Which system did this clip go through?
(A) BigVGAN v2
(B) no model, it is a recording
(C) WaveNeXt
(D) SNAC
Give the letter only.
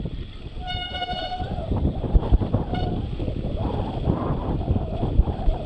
B